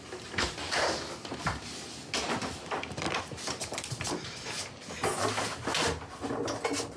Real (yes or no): yes